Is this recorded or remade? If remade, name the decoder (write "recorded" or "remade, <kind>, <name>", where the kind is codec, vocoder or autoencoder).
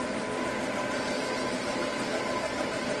recorded